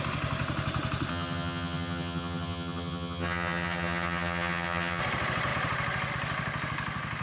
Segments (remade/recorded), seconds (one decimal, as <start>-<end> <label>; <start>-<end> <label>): 0.0-1.1 recorded; 1.1-5.0 remade; 5.0-7.2 recorded